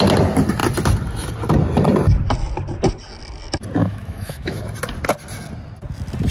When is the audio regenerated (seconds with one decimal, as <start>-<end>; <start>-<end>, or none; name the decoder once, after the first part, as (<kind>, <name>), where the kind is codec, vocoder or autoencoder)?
3.8-4.6 (autoencoder, DAC-VAE)